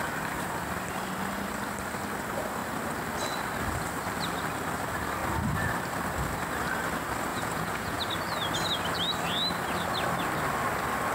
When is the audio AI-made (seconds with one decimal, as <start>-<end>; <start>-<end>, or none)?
7.3-8.0